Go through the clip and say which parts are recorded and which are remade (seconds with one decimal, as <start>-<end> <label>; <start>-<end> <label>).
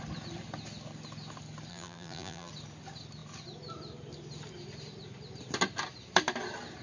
0.0-1.7 recorded; 1.7-2.5 remade; 2.5-6.8 recorded